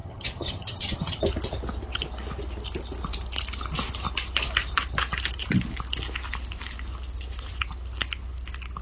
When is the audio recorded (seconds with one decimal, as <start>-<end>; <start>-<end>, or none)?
1.2-8.8